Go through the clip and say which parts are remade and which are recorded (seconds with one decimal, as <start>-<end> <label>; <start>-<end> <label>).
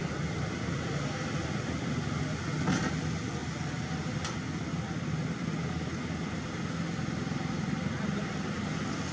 0.0-9.1 recorded